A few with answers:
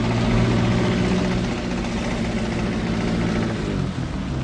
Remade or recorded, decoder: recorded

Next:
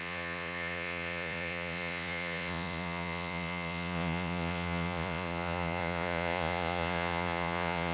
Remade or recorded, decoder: remade, vocoder, Vocos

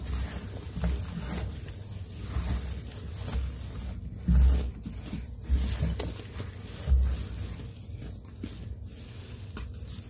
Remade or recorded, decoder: recorded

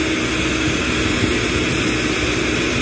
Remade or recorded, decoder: recorded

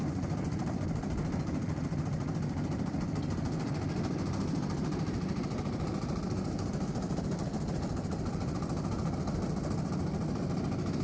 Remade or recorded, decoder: recorded